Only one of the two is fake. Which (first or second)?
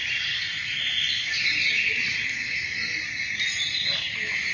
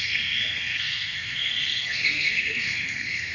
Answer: second